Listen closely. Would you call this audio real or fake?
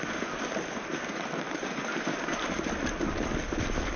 fake